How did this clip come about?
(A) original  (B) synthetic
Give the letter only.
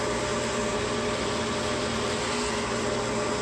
A